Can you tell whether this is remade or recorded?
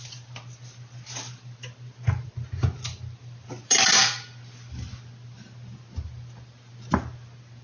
recorded